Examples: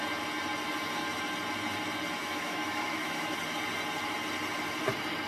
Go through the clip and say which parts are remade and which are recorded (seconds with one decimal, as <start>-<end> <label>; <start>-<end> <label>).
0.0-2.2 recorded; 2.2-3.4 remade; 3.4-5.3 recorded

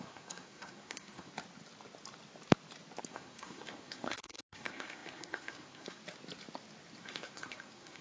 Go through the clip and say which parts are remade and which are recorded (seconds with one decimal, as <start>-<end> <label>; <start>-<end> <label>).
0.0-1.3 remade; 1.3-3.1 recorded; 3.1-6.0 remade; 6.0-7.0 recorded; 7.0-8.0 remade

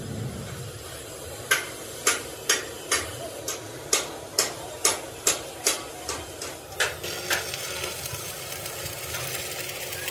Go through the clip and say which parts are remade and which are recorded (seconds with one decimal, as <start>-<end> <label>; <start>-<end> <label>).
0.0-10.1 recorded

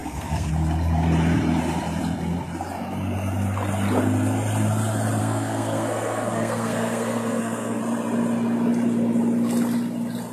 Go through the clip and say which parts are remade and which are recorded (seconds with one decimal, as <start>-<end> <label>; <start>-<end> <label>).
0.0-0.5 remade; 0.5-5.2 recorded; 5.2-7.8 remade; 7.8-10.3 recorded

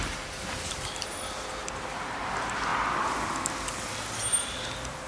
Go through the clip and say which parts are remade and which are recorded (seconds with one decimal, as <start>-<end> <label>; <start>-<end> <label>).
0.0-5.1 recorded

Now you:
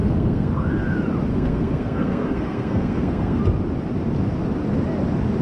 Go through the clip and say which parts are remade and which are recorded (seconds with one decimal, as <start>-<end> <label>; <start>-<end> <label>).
0.0-0.7 remade; 0.7-1.3 recorded; 1.3-3.4 remade; 3.4-5.4 recorded

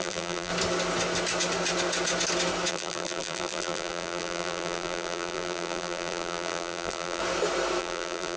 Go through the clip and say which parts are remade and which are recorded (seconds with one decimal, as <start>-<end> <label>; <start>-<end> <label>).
0.0-0.5 remade; 0.5-2.7 recorded; 2.7-7.2 remade; 7.2-7.8 recorded; 7.8-8.4 remade